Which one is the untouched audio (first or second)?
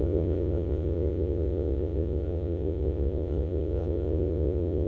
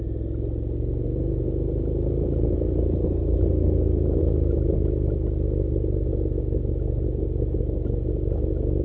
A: second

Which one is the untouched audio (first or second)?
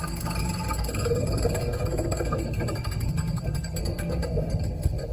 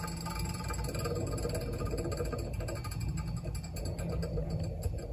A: second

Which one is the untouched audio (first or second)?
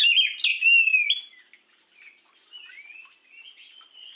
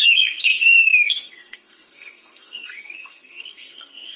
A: first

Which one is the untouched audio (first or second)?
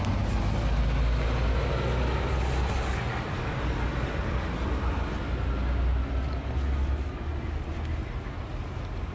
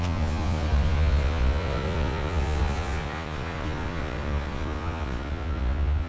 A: first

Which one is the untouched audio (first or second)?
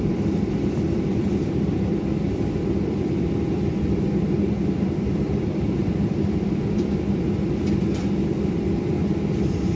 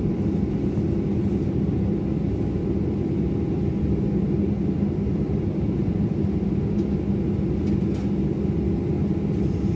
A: second